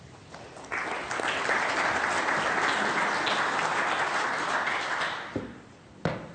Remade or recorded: recorded